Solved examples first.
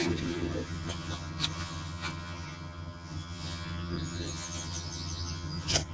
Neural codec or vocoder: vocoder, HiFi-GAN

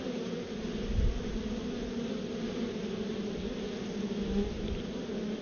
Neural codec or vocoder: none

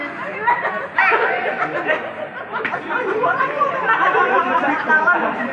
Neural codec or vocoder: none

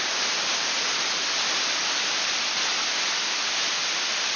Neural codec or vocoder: vocoder, BigVGAN v2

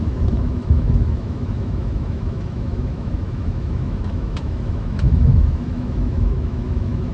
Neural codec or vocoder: autoencoder, DAC-VAE